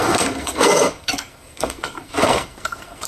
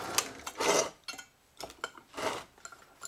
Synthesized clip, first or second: first